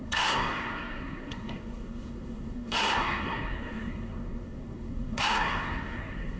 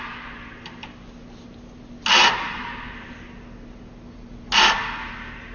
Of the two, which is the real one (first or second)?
second